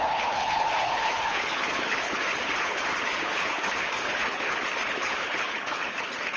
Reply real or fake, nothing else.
fake